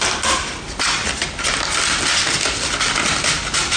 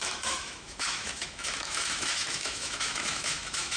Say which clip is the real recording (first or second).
first